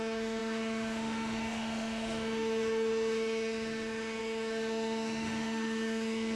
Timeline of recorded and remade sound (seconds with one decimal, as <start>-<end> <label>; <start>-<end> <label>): 0.0-6.3 remade